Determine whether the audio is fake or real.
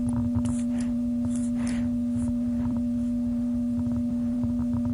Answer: fake